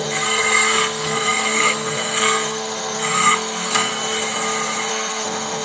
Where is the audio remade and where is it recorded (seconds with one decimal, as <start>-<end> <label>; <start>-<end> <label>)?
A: 0.0-3.9 remade; 3.9-4.9 recorded; 4.9-5.6 remade